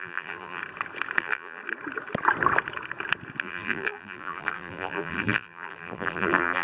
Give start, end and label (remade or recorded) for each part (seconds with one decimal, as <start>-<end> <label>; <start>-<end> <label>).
0.0-0.6 remade; 0.6-1.2 recorded; 1.2-1.6 remade; 1.6-3.4 recorded; 3.4-6.6 remade